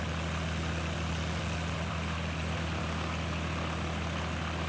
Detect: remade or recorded recorded